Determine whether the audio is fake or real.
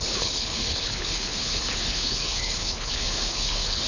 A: fake